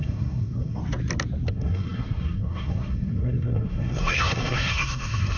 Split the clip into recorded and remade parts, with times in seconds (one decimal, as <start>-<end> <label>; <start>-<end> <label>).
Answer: 0.0-0.8 remade; 0.8-1.5 recorded; 1.5-5.4 remade